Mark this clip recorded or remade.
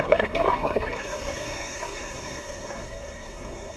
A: remade